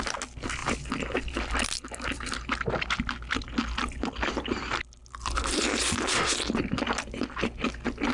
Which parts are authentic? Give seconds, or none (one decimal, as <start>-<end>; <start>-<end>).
0.0-8.1